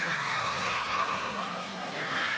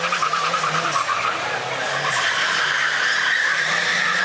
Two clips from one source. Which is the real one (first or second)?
second